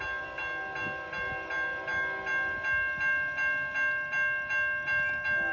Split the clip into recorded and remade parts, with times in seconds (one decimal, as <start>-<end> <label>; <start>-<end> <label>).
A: 0.0-5.5 recorded